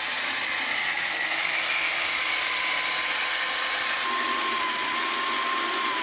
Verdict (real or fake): real